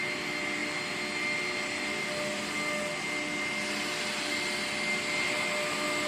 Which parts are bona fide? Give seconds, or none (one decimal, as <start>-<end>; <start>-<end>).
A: 0.0-6.1